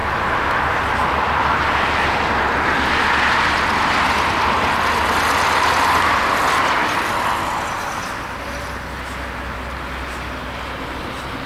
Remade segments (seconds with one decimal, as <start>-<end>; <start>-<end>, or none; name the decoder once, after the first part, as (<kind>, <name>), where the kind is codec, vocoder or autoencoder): none